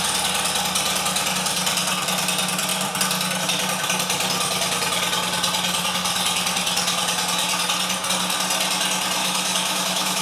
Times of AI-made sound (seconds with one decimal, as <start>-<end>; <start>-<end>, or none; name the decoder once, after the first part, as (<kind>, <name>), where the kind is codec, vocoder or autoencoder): 9.2-10.2 (autoencoder, DAC-VAE)